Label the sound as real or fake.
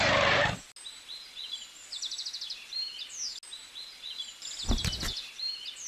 real